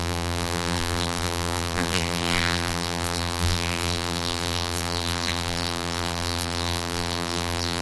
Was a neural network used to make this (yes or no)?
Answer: yes